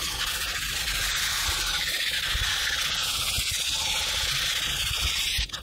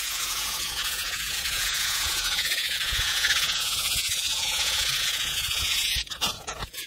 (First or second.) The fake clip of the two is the second